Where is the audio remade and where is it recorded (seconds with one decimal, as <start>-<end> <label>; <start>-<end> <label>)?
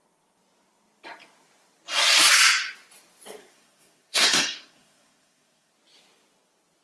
0.0-3.4 recorded; 3.4-5.7 remade; 5.7-6.8 recorded